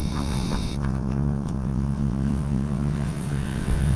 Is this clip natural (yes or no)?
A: no